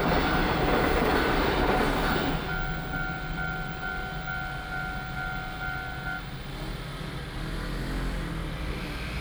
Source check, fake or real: real